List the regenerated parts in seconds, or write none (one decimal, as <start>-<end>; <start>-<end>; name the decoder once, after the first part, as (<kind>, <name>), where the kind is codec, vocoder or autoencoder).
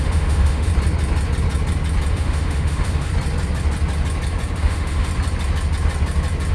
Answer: 0.0-0.7 (autoencoder, DAC-VAE); 2.1-3.1; 4.6-5.1